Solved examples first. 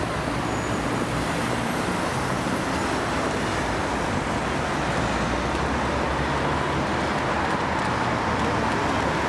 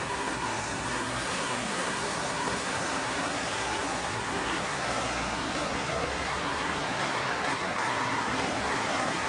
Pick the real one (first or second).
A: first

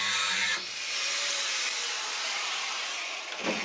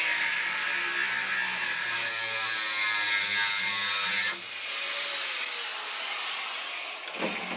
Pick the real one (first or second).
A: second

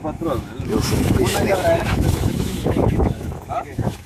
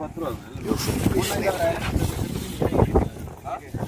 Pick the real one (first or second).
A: second